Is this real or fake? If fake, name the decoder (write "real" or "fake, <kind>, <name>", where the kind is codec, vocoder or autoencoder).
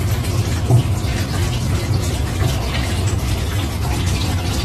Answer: real